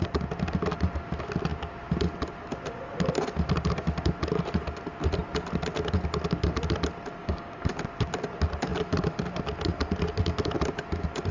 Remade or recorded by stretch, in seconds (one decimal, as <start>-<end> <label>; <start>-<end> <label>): 0.0-7.2 recorded; 7.2-7.7 remade; 7.7-11.3 recorded